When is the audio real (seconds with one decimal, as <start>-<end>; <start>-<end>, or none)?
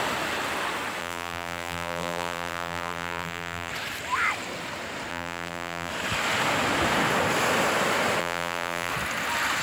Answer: 0.0-1.0; 3.7-5.1; 5.9-8.2; 8.9-9.6